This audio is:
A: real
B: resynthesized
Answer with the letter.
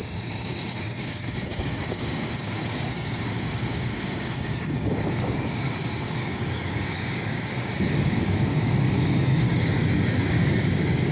B